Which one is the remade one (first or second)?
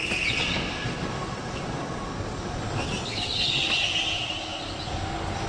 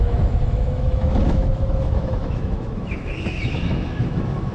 second